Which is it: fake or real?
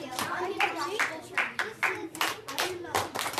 fake